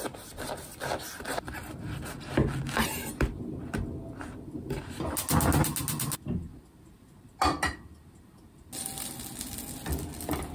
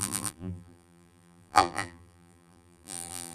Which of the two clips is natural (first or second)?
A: first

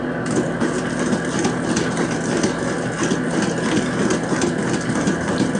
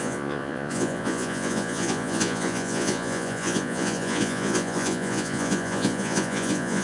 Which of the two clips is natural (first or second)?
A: first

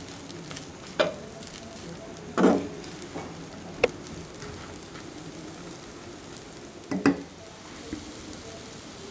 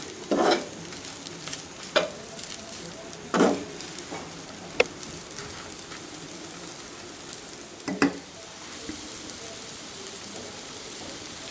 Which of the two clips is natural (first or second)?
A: first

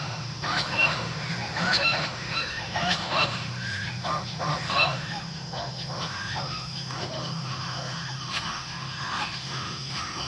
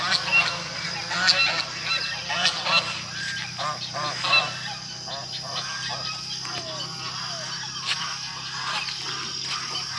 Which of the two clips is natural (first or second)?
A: second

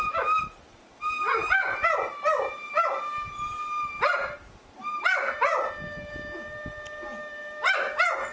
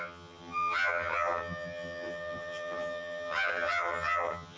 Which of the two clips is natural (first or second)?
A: first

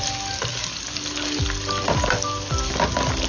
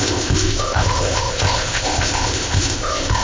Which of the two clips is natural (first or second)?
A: first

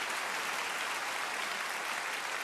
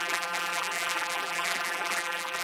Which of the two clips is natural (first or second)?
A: first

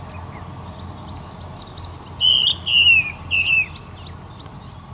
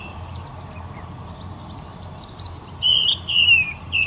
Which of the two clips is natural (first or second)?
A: first